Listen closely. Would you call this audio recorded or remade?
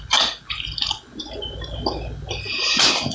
recorded